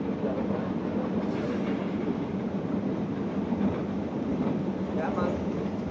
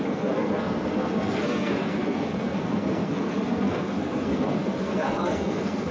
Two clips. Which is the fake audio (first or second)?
second